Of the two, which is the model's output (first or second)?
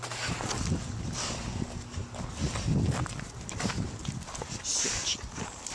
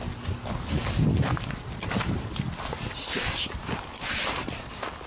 second